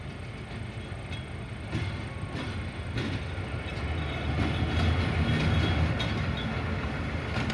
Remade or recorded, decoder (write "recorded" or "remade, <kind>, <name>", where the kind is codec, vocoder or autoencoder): recorded